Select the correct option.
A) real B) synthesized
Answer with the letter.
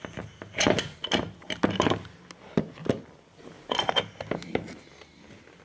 A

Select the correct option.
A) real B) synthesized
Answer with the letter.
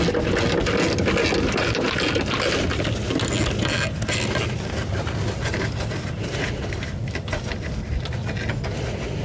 A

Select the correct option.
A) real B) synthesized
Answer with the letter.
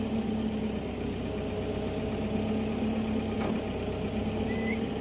A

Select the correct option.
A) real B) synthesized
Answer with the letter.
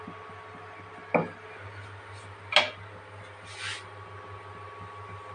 A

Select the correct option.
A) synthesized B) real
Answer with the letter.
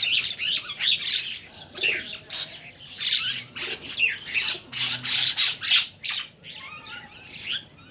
B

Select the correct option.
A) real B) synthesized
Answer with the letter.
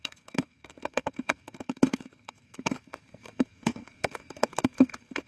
B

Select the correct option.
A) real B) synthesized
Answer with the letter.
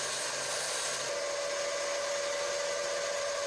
A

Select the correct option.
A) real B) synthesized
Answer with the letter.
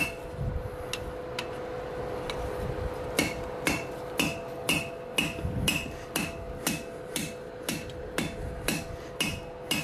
A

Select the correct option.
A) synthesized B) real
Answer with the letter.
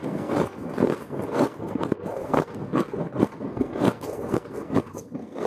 A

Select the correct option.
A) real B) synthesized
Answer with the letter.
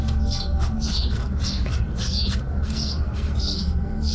B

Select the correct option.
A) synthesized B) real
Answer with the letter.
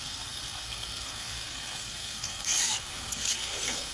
A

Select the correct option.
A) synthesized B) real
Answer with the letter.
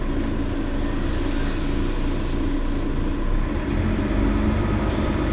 B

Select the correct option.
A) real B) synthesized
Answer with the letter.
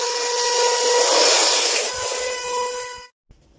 A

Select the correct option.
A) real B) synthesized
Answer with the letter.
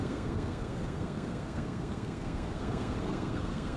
B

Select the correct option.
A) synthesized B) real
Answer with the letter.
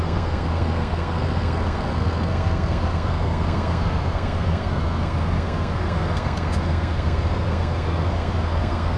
A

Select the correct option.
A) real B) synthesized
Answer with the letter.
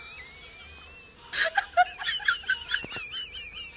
A